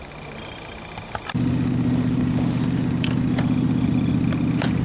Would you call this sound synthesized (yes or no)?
no